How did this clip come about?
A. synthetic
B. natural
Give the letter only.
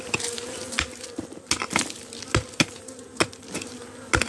B